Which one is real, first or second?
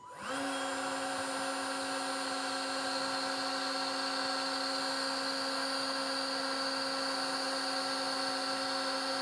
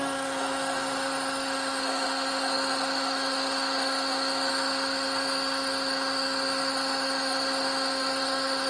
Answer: first